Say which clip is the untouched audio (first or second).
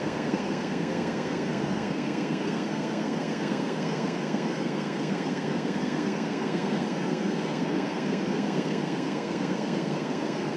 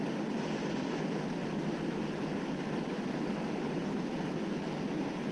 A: second